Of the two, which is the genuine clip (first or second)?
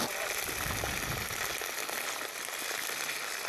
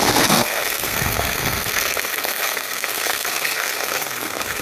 first